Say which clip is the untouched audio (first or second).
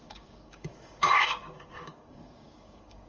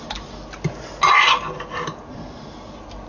second